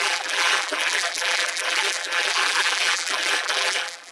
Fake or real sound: fake